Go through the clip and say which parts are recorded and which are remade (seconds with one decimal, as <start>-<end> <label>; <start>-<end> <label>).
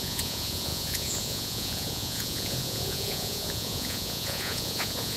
0.0-5.2 remade